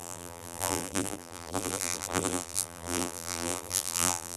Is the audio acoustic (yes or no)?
no